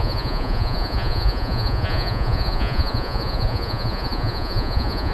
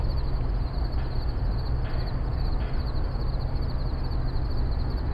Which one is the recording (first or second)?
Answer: second